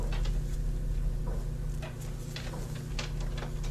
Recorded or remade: recorded